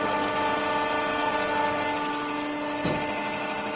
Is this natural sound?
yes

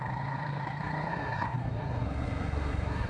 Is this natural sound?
no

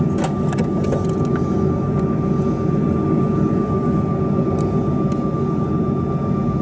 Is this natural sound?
yes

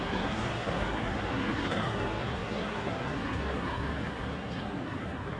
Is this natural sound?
no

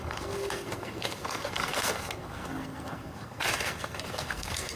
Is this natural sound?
no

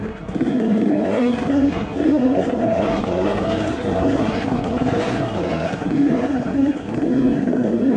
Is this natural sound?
no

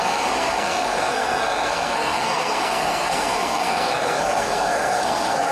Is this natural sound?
no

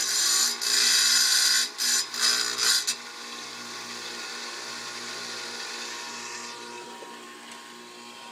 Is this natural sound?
yes